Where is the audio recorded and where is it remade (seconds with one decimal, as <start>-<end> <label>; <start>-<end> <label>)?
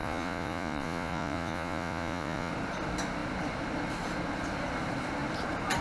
0.0-2.5 remade; 2.5-5.8 recorded